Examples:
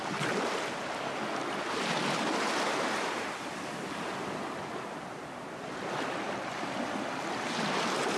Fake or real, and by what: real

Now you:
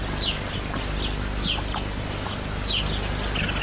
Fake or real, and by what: real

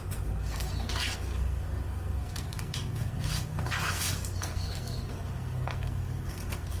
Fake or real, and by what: fake, codec, SNAC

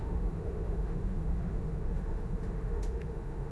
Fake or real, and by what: fake, autoencoder, DAC-VAE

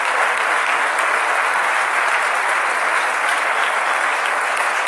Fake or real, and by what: real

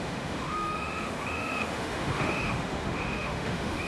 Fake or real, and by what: fake, autoencoder, DAC-VAE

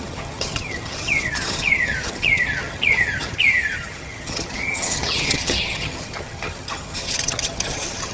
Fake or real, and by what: fake, vocoder, HiFi-GAN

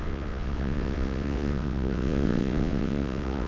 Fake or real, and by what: fake, vocoder, WaveNeXt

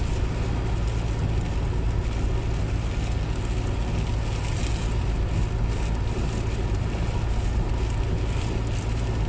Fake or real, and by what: real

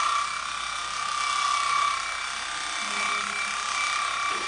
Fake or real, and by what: real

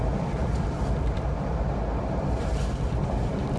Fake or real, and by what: real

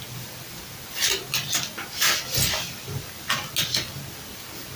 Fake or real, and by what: real